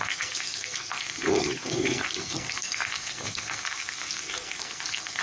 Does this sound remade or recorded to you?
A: remade